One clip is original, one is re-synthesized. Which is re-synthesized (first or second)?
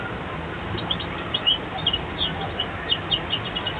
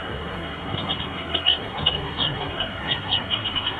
second